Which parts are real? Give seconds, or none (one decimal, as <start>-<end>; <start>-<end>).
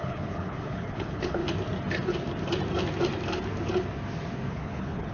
1.4-4.5